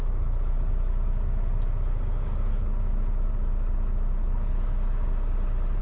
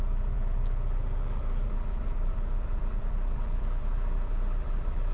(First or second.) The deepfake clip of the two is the second